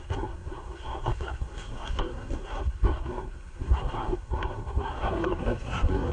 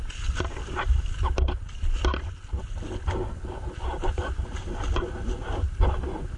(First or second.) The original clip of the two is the second